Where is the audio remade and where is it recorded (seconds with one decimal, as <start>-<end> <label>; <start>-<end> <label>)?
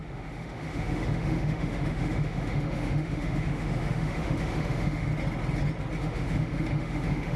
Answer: 0.0-5.1 remade; 5.1-6.0 recorded; 6.0-7.4 remade